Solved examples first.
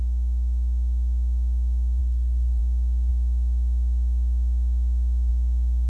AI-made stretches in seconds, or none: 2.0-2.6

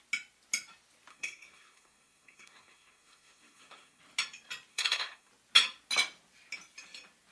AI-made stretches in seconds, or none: 1.1-4.0; 4.7-5.3

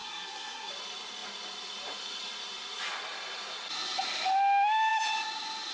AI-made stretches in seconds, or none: 0.0-0.7

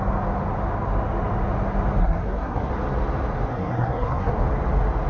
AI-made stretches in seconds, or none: 2.0-2.7; 3.5-4.3

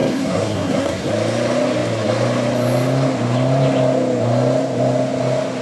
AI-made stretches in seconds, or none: 0.0-1.1

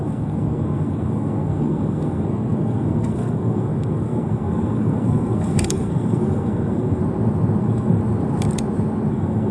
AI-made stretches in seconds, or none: 0.0-7.0; 7.6-8.0; 9.1-9.5

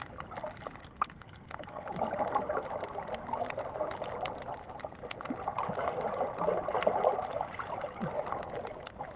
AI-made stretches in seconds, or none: 0.8-1.9